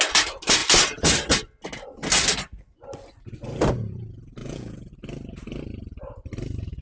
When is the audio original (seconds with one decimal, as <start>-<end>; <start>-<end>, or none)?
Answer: 0.0-4.4; 4.9-6.8